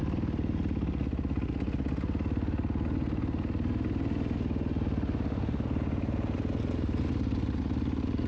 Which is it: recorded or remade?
recorded